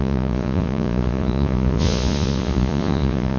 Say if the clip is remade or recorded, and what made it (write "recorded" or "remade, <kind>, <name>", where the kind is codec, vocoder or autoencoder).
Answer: remade, vocoder, Vocos